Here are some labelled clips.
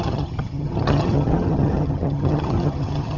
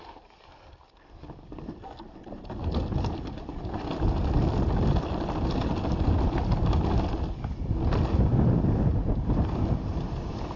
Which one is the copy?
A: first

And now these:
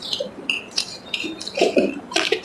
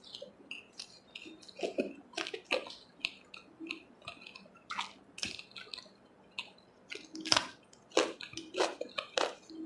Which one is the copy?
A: first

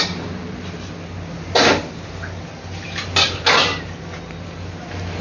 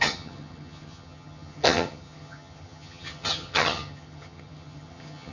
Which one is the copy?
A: second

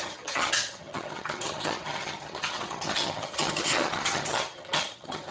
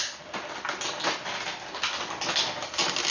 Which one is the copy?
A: first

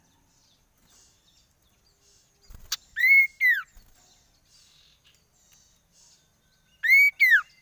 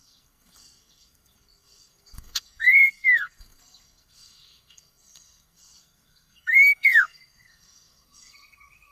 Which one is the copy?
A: second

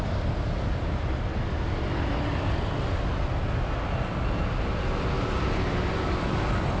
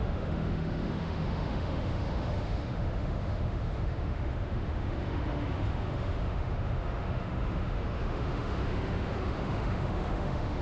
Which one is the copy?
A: second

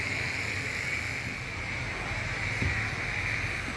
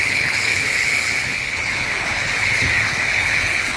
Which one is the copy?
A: second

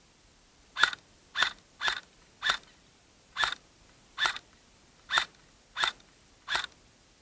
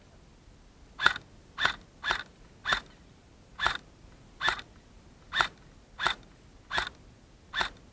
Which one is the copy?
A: first